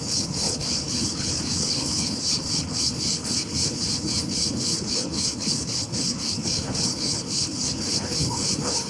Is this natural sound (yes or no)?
no